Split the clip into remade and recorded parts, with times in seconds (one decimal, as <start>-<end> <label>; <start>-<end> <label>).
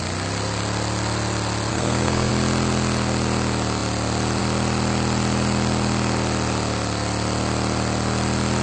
0.0-1.7 recorded; 1.7-2.3 remade; 2.3-8.6 recorded